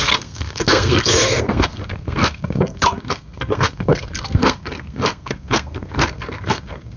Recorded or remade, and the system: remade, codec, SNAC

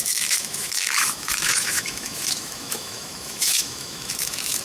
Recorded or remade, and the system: remade, autoencoder, DAC-VAE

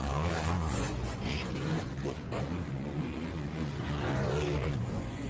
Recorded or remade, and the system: remade, vocoder, Vocos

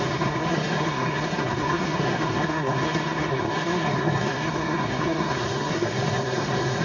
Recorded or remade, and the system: remade, codec, SNAC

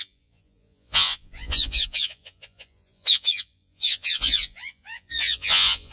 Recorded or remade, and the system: remade, vocoder, Vocos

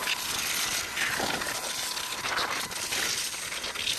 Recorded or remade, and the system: recorded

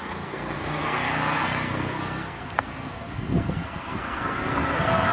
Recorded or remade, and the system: remade, codec, SNAC